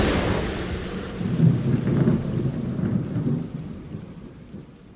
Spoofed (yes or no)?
no